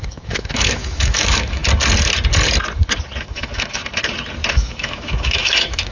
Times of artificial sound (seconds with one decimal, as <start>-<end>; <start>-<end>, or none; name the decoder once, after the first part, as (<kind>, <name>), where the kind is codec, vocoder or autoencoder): 0.0-1.6 (autoencoder, DAC-VAE); 3.2-3.8; 4.5-5.9